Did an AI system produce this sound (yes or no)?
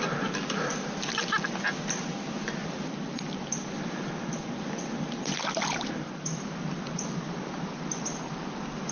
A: no